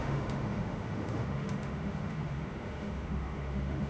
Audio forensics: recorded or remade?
remade